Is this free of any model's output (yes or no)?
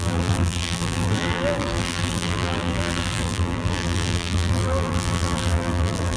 no